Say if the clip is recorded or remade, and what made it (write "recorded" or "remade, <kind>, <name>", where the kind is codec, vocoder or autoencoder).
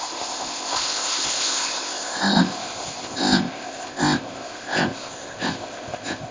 remade, codec, ZipCodec